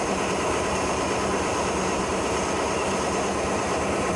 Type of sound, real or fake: fake